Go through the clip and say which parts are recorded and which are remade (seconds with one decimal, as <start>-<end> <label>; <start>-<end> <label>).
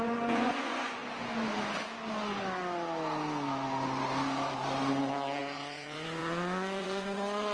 0.0-1.0 remade; 1.0-5.4 recorded; 5.4-6.2 remade; 6.2-6.8 recorded; 6.8-7.5 remade